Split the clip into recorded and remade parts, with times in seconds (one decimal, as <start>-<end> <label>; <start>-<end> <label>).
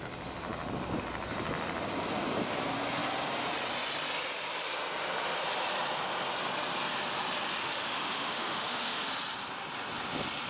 0.0-7.6 recorded; 7.6-9.1 remade; 9.1-10.5 recorded